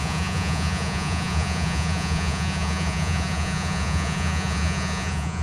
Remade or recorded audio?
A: remade